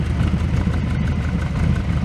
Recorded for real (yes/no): yes